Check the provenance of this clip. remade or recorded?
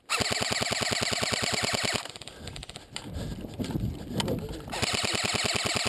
recorded